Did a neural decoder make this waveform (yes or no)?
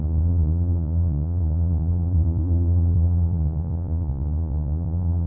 yes